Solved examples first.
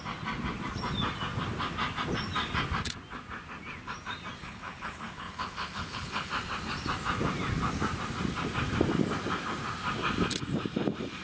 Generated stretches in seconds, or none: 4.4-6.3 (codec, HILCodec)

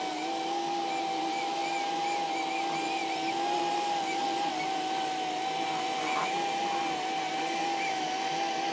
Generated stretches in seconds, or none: none

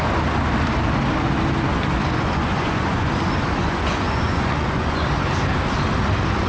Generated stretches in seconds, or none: 2.0-3.1 (vocoder, Vocos); 3.6-5.1

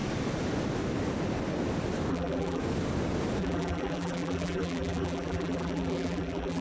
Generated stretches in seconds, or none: 2.1-2.6 (vocoder, BigVGAN v2); 3.4-6.6

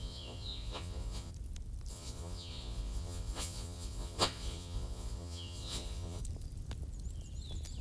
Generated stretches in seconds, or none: 0.0-1.3 (vocoder, Vocos); 1.9-6.2

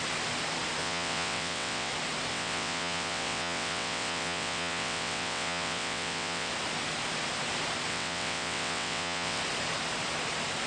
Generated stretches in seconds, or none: 0.8-1.9 (vocoder, WaveNeXt); 2.3-6.5; 7.9-9.4